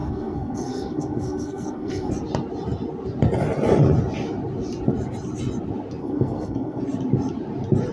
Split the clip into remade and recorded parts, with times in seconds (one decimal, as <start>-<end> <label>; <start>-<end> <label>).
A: 0.0-2.1 remade; 2.1-6.0 recorded; 6.0-6.8 remade; 6.8-7.9 recorded